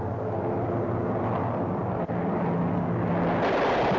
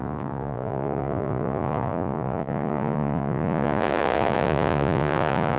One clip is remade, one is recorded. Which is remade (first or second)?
second